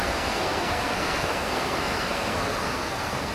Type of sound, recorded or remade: remade